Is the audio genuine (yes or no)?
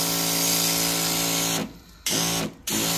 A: yes